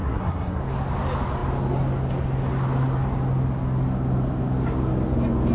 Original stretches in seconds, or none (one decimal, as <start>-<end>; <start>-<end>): 0.6-5.5